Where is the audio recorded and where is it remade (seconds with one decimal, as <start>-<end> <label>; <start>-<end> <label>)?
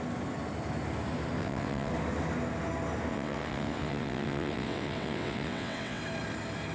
0.0-1.4 recorded; 1.4-1.9 remade; 1.9-3.1 recorded; 3.1-6.0 remade; 6.0-6.7 recorded